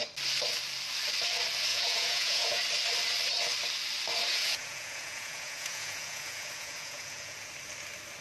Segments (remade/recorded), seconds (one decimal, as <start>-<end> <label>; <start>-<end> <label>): 0.0-1.7 recorded; 1.7-2.6 remade; 2.6-4.3 recorded; 4.3-7.5 remade; 7.5-8.2 recorded